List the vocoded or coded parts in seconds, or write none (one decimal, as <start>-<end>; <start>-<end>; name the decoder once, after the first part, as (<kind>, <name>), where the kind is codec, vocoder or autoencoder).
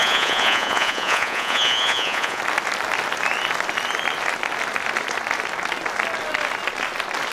0.0-2.4 (vocoder, Vocos)